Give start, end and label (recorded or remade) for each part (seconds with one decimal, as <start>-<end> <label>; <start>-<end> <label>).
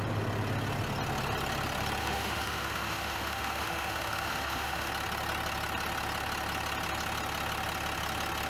0.0-2.0 recorded; 2.0-4.9 remade; 4.9-8.5 recorded